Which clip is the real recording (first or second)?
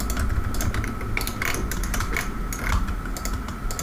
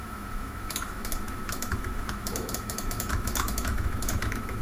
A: first